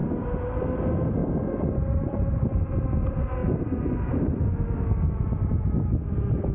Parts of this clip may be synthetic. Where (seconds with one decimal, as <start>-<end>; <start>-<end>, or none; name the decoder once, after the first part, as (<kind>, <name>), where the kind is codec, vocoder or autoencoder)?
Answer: none